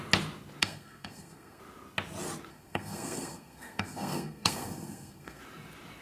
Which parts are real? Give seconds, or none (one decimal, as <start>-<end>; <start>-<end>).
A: 0.0-0.6; 1.6-2.5; 5.4-6.0